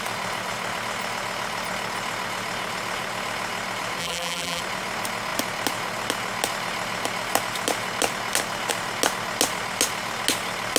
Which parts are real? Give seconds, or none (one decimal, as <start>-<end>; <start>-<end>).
0.0-4.0; 4.6-10.8